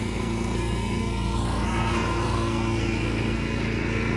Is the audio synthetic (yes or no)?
yes